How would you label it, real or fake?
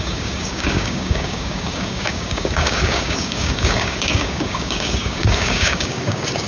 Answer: fake